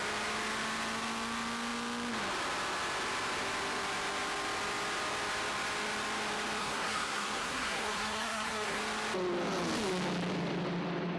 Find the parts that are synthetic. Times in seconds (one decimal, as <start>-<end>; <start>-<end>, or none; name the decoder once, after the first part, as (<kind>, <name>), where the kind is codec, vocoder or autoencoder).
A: 6.6-8.8 (codec, SNAC)